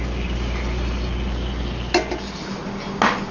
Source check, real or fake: real